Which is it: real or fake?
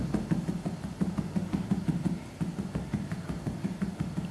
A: real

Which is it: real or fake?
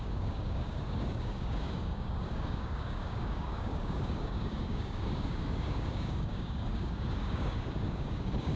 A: fake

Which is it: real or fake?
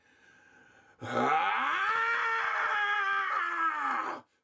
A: real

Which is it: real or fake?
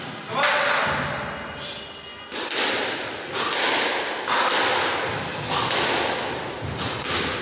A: real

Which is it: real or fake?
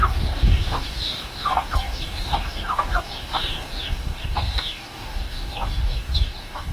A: fake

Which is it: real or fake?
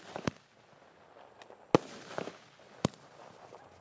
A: real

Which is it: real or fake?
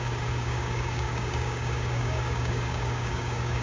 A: fake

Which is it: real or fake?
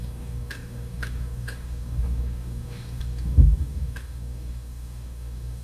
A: fake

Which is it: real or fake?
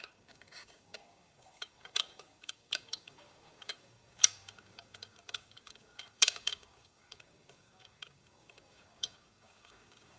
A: fake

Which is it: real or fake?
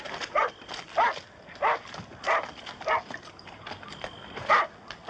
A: real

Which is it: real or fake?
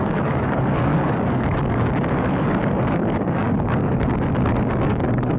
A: fake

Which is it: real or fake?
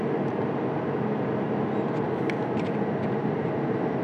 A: real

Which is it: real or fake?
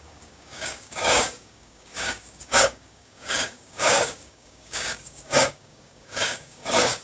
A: fake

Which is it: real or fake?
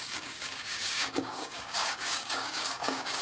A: fake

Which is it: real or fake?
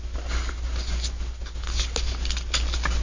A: real